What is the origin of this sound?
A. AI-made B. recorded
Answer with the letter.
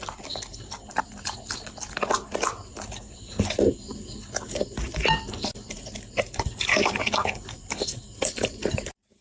B